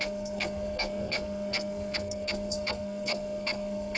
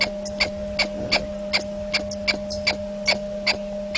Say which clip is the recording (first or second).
second